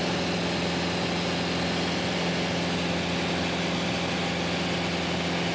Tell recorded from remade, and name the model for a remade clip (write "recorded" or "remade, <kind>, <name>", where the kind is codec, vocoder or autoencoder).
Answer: recorded